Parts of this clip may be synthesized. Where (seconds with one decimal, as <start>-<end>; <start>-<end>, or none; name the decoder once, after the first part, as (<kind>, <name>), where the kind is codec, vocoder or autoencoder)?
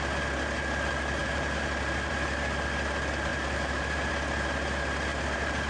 1.2-2.1 (vocoder, BigVGAN v2); 3.3-4.1; 5.1-5.7